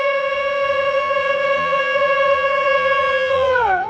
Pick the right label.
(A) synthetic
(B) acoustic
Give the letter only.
A